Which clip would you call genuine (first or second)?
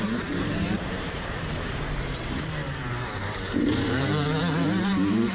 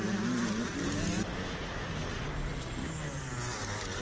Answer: second